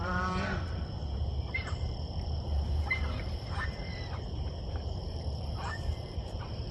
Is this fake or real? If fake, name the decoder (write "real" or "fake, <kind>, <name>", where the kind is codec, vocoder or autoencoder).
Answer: fake, vocoder, BigVGAN v2